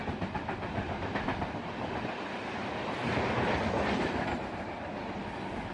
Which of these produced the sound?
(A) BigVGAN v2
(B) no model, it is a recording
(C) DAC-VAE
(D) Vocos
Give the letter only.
B